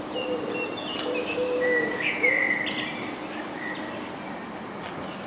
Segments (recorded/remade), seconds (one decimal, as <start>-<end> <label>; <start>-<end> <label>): 0.0-1.2 recorded; 1.2-2.1 remade; 2.1-5.3 recorded